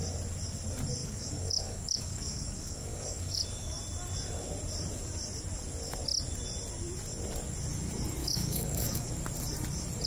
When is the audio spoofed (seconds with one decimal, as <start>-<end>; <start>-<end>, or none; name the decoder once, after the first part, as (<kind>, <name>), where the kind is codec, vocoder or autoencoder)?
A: 1.0-3.8 (codec, DAC); 8.2-9.1